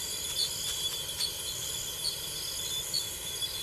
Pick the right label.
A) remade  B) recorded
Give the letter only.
B